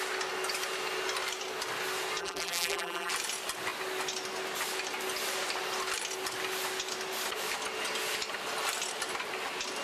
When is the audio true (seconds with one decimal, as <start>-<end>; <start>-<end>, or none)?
0.0-2.2; 3.1-9.8